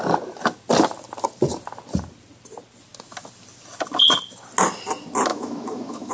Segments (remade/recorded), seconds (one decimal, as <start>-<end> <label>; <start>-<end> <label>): 0.0-5.3 recorded; 5.3-6.1 remade